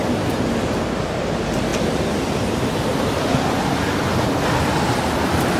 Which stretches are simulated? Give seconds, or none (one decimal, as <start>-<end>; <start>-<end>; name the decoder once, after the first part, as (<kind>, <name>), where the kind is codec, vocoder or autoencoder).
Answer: none